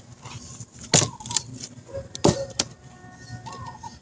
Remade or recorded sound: recorded